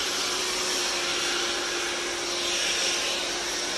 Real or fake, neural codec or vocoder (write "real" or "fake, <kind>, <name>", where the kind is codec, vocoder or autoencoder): real